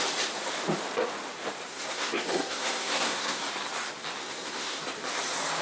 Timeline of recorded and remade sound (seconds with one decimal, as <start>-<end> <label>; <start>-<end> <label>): 0.0-1.7 recorded; 1.7-3.4 remade; 3.4-4.2 recorded; 4.2-4.8 remade; 4.8-5.6 recorded